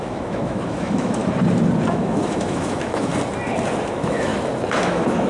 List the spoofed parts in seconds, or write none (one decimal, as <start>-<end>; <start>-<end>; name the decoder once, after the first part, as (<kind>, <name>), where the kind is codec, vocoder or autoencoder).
0.0-1.2 (autoencoder, DAC-VAE); 1.9-3.1; 3.9-4.3; 4.8-5.3